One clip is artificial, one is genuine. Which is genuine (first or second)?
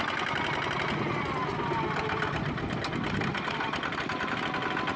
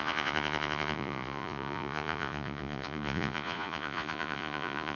first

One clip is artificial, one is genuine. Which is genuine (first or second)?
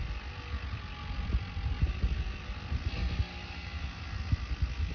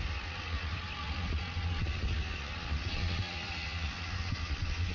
first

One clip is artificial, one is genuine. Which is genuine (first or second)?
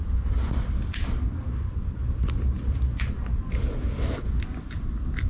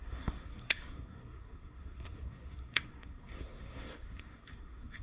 first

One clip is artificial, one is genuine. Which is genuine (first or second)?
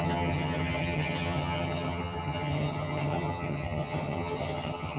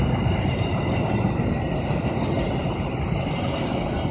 second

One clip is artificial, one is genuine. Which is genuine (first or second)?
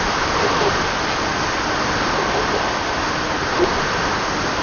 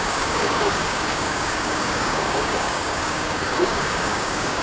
first